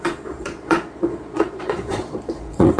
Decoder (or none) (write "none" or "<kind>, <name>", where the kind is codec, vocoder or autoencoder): vocoder, Vocos